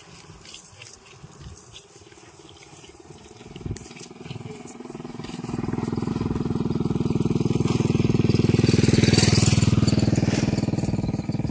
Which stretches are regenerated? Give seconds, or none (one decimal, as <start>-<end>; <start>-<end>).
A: 2.7-6.1